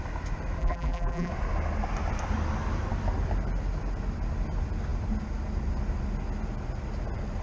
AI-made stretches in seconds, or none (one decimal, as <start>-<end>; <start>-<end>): 0.6-1.3